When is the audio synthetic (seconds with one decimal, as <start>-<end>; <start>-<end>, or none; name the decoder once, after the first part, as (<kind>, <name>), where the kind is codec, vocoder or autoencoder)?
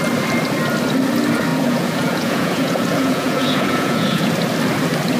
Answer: 1.5-4.3 (vocoder, Vocos)